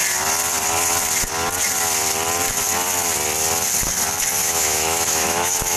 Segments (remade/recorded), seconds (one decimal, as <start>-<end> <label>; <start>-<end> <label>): 0.0-4.4 recorded; 4.4-5.8 remade